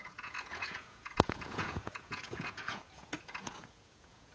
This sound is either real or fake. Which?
fake